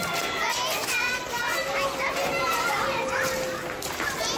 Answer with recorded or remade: recorded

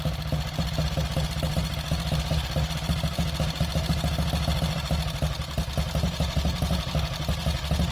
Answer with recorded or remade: recorded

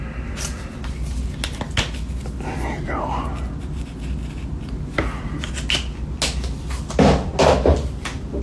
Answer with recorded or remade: recorded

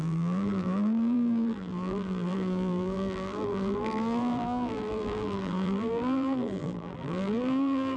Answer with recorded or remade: remade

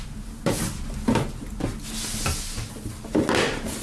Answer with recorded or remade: recorded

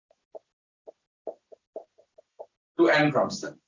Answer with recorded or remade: recorded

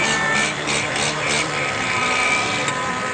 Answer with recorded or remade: remade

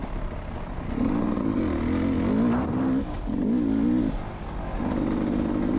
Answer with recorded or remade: recorded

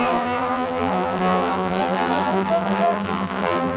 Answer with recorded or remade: remade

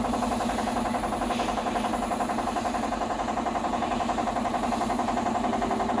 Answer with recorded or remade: recorded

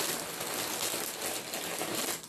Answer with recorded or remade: recorded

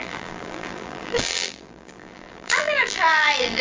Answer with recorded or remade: remade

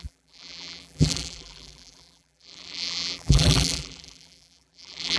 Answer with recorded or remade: remade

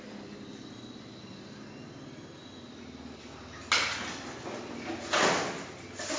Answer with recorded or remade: recorded